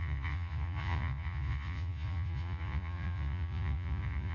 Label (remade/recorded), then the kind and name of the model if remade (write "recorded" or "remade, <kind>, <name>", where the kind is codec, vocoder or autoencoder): remade, vocoder, Vocos